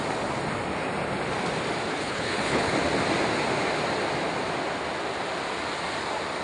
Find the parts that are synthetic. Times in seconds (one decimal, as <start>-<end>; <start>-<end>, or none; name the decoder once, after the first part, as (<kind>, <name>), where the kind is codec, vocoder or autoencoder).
1.9-2.7 (codec, HILCodec)

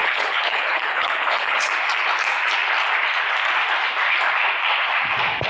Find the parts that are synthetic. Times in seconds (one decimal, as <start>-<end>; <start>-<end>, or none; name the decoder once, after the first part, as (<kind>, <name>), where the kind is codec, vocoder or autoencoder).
0.0-1.7 (codec, HILCodec)

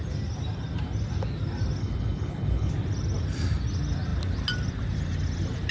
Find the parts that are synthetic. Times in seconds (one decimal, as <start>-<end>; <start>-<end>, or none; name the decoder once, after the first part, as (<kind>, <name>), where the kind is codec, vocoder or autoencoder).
1.8-2.7 (codec, HILCodec)

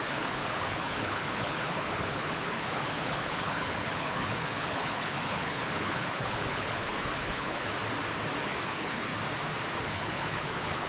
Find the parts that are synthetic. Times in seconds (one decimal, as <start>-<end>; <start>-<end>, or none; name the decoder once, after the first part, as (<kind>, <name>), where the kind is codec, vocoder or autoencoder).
0.0-7.7 (codec, HILCodec); 8.4-9.1; 9.8-10.9